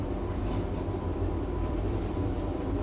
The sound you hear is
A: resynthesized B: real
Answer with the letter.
A